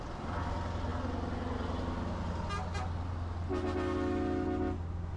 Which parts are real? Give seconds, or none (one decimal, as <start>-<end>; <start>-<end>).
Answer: 0.0-5.2